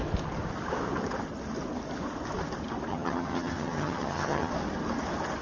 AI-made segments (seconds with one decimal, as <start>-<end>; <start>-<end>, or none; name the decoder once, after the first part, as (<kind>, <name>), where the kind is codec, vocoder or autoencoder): 2.9-4.5 (vocoder, HiFi-GAN)